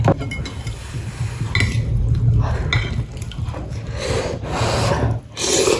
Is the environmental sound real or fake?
real